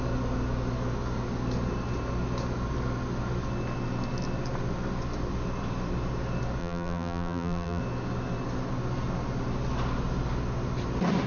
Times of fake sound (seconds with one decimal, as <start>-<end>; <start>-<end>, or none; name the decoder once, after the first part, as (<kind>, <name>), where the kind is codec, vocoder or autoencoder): 6.6-7.8 (vocoder, BigVGAN v2)